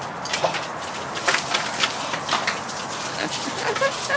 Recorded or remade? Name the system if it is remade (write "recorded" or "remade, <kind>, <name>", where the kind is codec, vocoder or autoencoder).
recorded